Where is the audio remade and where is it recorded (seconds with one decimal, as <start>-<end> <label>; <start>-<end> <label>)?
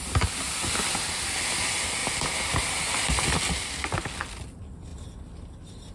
0.0-5.9 recorded